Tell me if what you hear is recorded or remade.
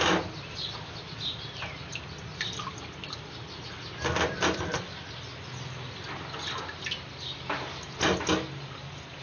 recorded